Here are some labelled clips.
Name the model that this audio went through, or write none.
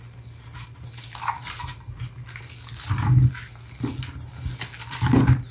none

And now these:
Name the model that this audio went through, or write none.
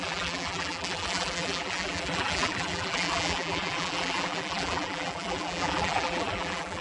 vocoder, BigVGAN v2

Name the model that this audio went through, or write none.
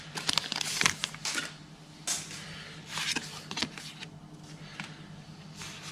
none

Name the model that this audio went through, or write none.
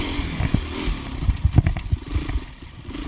vocoder, BigVGAN v2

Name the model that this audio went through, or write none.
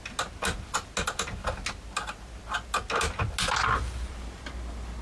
none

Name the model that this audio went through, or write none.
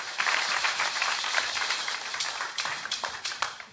vocoder, BigVGAN v2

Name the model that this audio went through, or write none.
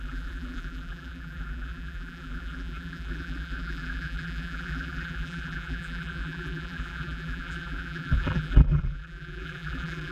vocoder, BigVGAN v2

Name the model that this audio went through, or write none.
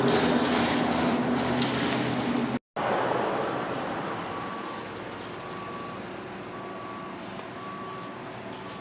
none